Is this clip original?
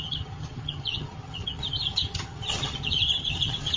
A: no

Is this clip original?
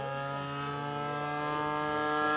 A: yes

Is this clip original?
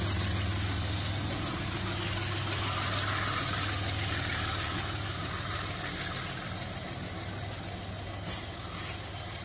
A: yes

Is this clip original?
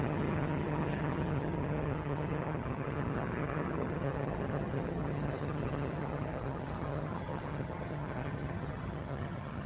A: no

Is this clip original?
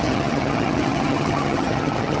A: no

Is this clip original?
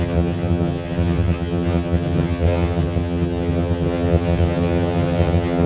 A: no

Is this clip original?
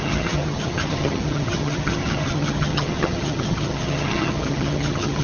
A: no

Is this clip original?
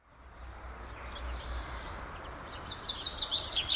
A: yes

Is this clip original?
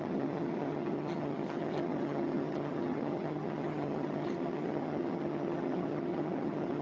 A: no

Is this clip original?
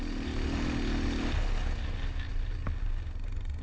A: yes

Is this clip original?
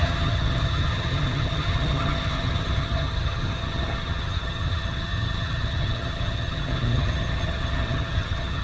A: no